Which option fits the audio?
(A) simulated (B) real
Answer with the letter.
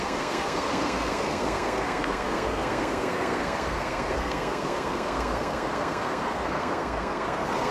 A